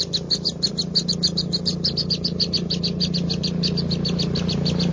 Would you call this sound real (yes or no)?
yes